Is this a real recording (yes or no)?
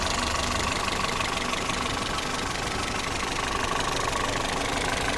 yes